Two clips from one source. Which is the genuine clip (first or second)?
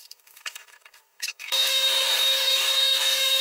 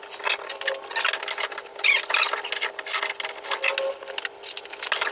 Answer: second